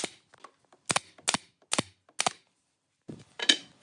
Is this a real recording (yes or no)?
yes